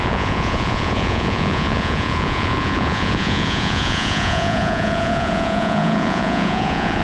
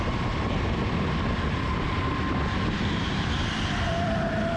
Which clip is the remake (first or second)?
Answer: first